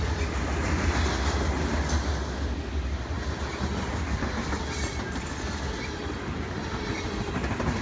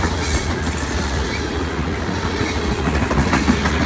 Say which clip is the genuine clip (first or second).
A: first